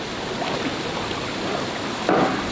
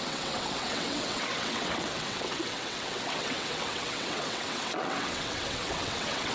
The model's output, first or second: second